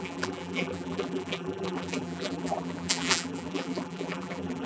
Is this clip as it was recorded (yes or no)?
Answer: no